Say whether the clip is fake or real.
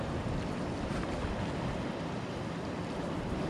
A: real